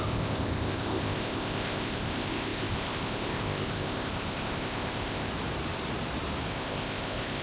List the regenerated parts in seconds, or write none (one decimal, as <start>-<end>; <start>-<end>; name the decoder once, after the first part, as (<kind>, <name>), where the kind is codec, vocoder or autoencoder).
0.0-5.3 (codec, ZipCodec); 6.5-7.4